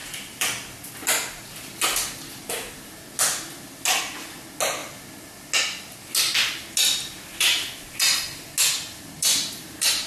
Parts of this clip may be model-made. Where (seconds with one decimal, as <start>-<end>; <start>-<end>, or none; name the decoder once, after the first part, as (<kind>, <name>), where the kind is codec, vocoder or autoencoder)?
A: 0.0-0.9 (vocoder, BigVGAN v2)